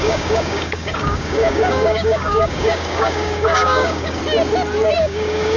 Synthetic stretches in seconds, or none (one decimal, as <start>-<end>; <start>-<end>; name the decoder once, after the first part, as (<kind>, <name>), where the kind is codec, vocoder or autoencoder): 0.0-4.2 (codec, DAC); 5.0-5.6